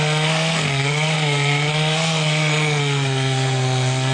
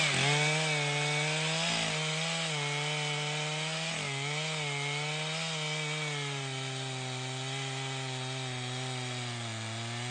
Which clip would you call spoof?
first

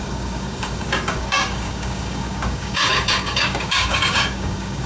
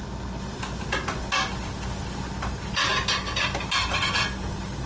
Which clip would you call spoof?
first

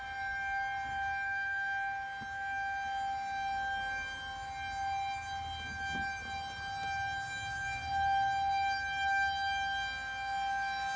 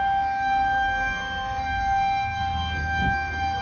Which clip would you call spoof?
second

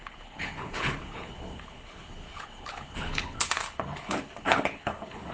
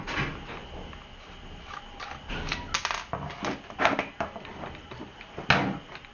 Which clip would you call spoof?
first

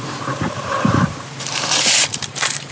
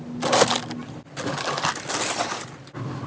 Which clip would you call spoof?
first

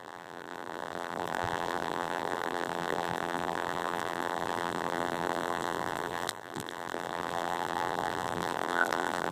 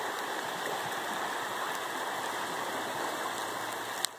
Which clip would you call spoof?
first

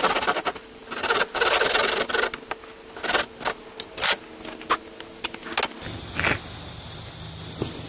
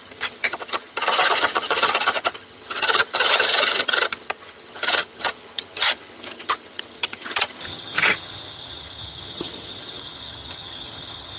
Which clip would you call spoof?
second